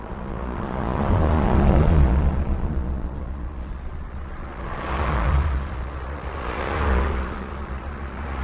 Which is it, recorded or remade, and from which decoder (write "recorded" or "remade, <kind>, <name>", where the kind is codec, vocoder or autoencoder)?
remade, vocoder, Vocos